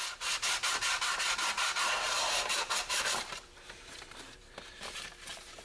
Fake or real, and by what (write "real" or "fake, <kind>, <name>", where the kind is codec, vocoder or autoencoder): fake, vocoder, BigVGAN v2